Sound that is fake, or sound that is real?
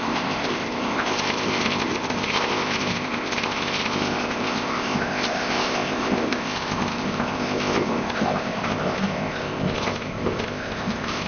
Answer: fake